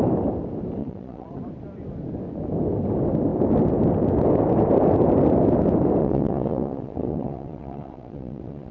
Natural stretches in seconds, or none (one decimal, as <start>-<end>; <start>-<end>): 0.0-0.8; 1.4-6.0